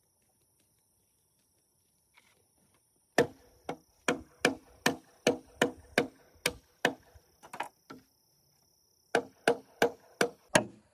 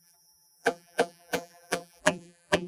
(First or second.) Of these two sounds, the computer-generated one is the second